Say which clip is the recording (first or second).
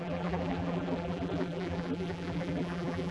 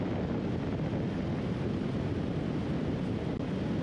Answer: second